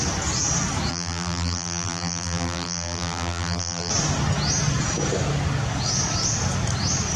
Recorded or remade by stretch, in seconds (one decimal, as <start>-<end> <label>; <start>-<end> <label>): 0.0-0.9 recorded; 0.9-3.9 remade; 3.9-7.2 recorded

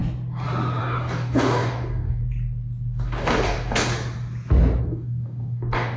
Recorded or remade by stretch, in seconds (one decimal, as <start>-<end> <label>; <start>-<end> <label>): 0.0-0.8 recorded; 0.8-2.2 remade; 2.2-3.0 recorded; 3.0-3.9 remade; 3.9-4.8 recorded; 4.8-6.0 remade

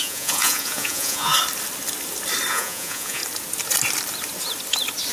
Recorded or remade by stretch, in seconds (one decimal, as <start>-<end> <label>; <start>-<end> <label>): 0.0-1.3 remade; 1.3-2.5 recorded; 2.5-3.2 remade; 3.2-5.1 recorded

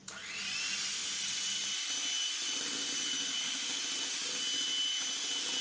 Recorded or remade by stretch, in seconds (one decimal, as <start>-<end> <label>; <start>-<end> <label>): 0.0-0.5 remade; 0.5-1.0 recorded; 1.0-4.3 remade; 4.3-5.6 recorded

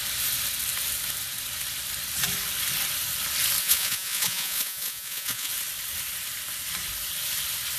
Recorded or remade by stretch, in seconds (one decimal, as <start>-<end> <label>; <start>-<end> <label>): 0.0-3.6 recorded; 3.6-5.5 remade; 5.5-7.8 recorded

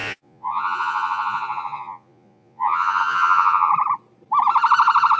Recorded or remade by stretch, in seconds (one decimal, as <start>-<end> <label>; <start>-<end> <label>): 0.0-3.7 remade; 3.7-5.2 recorded

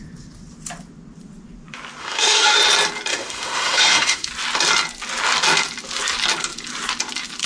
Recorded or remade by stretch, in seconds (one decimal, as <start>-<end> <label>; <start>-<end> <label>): 0.0-2.0 recorded; 2.0-2.6 remade; 2.6-3.1 recorded; 3.1-4.3 remade; 4.3-7.5 recorded